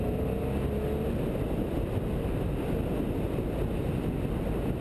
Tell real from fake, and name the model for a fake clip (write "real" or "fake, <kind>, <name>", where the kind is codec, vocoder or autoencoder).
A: real